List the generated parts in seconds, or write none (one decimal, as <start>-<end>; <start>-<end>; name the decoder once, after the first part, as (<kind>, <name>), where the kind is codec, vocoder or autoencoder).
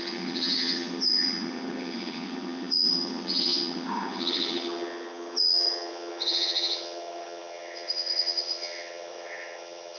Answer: 0.0-10.0 (vocoder, HiFi-GAN)